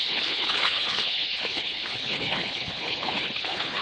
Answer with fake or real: fake